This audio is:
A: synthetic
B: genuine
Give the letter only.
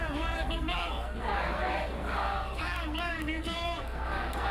A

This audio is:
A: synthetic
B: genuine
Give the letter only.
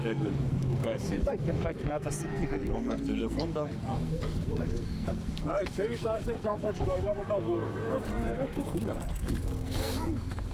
A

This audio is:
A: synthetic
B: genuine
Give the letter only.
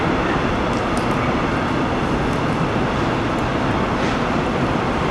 B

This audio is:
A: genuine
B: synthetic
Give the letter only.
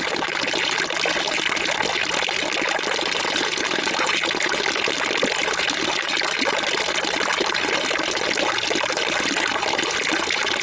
A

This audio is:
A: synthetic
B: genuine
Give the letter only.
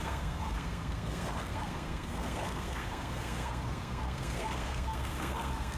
A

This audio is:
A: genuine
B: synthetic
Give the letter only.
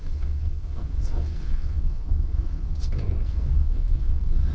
B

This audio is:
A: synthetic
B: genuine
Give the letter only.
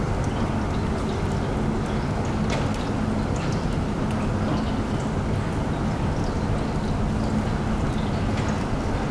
B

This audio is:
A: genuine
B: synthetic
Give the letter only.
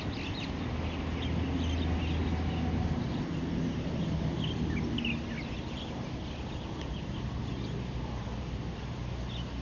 A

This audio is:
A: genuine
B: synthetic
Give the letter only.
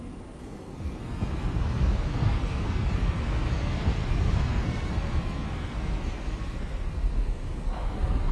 B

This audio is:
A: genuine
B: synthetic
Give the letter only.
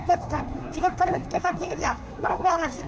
B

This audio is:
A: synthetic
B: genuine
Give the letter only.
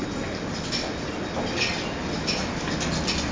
B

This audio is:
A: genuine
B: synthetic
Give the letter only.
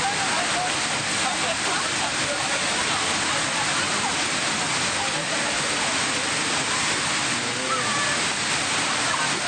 A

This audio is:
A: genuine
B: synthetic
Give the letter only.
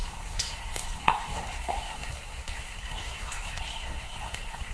B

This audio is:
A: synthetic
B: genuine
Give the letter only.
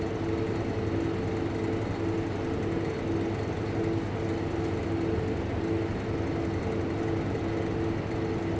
B